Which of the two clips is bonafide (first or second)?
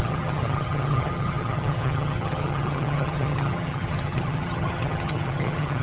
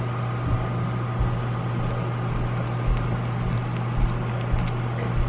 second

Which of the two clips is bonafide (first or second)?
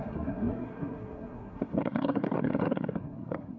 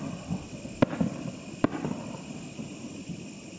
second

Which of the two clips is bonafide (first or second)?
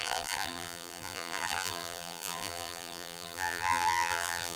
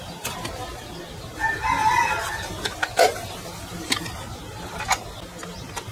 second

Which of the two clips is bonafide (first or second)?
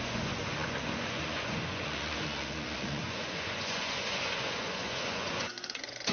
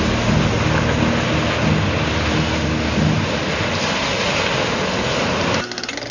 second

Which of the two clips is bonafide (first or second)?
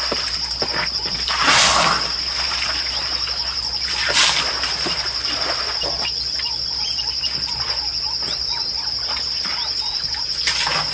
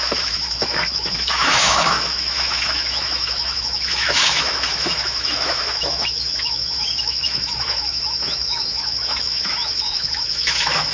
first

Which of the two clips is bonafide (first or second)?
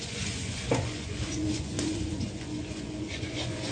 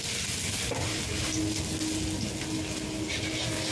second